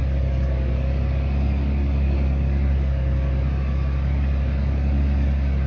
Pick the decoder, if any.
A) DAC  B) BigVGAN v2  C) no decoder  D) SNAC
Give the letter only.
A